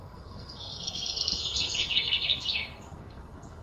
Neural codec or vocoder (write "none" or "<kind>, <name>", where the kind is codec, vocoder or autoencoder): codec, SNAC